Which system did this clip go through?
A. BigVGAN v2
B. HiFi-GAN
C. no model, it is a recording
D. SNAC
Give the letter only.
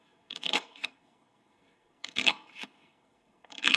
D